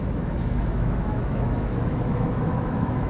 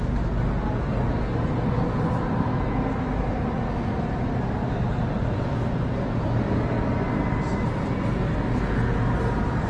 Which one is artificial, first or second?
first